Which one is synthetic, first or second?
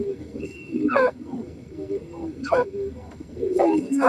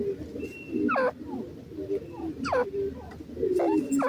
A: first